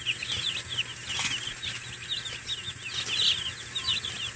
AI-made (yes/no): no